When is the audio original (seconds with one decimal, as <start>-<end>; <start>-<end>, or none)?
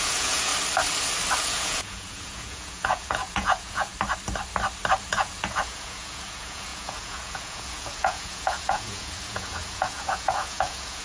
0.5-1.4; 3.9-5.1